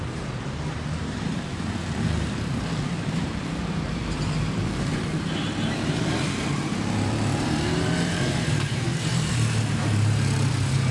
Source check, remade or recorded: remade